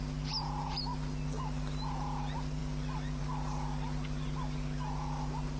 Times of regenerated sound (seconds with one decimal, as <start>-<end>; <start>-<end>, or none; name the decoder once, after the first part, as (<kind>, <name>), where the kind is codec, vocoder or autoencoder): none